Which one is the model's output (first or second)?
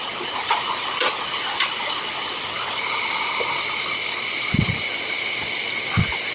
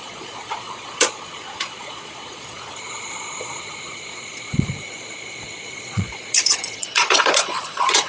second